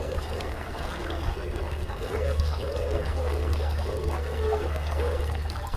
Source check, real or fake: fake